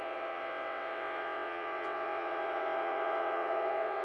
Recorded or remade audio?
remade